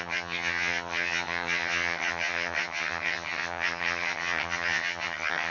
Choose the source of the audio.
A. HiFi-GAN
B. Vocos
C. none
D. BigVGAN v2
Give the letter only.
A